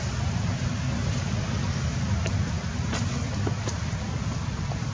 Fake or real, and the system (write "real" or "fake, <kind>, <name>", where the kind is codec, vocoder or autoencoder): real